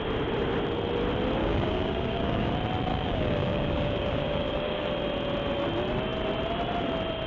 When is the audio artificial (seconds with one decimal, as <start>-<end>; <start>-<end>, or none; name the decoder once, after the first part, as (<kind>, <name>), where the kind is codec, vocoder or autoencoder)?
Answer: 1.4-2.5 (codec, DAC); 2.9-4.9